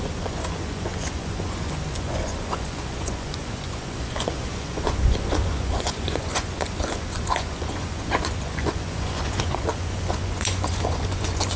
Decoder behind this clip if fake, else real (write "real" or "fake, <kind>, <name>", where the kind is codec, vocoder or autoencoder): fake, vocoder, Vocos